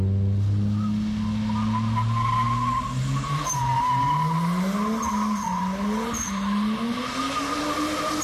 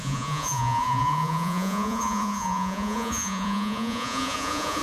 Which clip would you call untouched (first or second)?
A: first